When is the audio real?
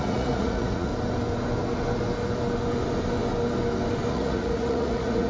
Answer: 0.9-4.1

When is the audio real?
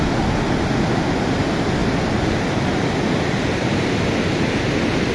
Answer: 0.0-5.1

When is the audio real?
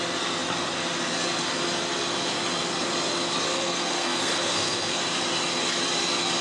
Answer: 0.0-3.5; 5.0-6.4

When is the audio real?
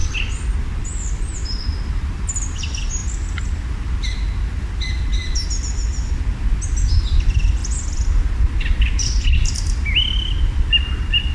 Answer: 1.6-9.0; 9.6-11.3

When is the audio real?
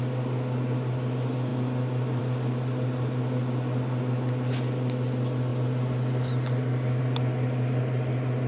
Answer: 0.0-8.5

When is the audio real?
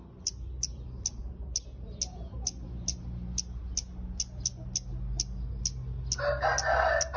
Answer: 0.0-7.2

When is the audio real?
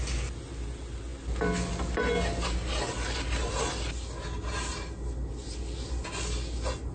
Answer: 0.0-6.9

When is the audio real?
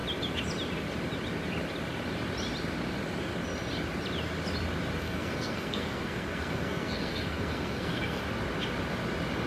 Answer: 0.0-5.0; 8.2-9.5